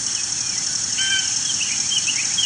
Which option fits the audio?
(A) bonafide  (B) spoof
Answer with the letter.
A